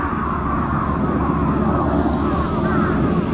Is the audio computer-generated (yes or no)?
no